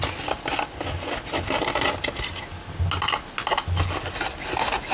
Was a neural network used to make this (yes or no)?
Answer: no